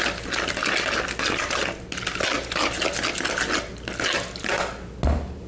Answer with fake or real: real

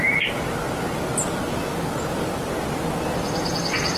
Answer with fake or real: real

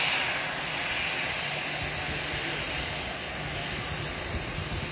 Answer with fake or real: real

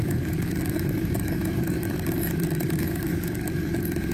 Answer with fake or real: fake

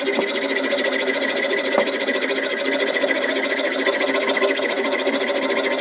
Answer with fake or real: real